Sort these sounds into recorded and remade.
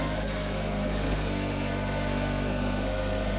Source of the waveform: remade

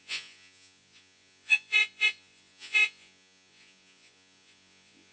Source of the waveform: remade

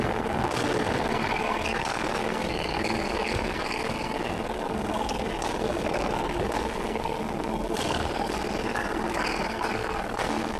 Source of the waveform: remade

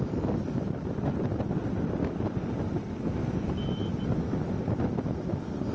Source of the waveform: recorded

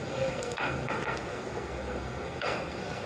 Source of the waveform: remade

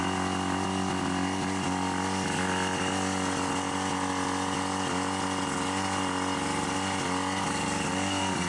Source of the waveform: recorded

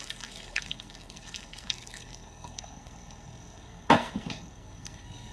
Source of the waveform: remade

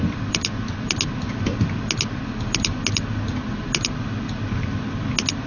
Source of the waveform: recorded